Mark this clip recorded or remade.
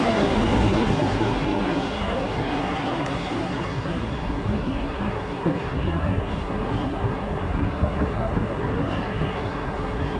remade